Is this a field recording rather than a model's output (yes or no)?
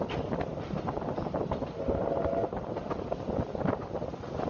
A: yes